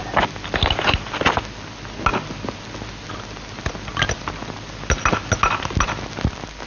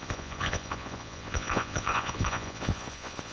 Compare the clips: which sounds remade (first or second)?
second